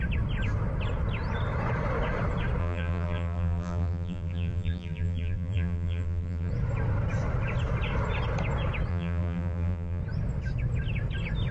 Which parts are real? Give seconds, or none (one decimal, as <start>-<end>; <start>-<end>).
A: 0.0-2.6; 6.5-8.9; 10.0-11.5